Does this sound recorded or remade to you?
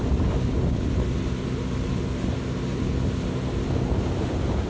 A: recorded